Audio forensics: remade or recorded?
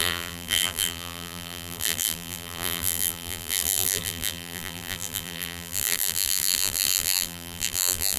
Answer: remade